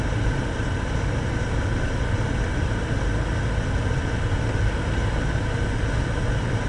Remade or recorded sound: recorded